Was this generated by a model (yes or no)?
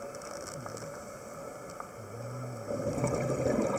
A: no